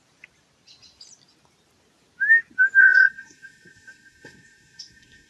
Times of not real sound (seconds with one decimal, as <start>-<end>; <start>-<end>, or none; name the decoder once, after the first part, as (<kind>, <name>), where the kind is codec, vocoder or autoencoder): 2.8-5.3 (codec, SNAC)

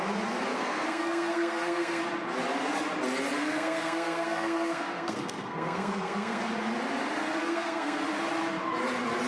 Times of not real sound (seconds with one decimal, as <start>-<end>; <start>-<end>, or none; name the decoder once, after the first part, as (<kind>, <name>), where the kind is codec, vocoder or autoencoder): 0.5-2.0 (codec, SNAC); 3.4-6.4; 7.4-8.0

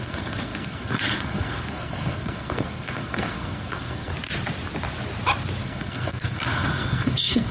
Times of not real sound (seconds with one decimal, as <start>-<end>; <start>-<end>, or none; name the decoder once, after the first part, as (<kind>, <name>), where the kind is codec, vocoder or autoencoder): 0.0-4.1 (codec, SNAC); 5.6-7.5